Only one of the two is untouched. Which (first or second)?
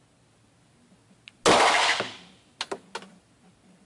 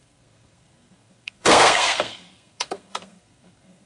first